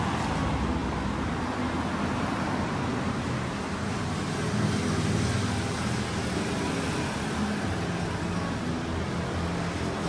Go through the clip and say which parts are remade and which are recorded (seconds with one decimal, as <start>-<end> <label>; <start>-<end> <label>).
0.0-10.1 recorded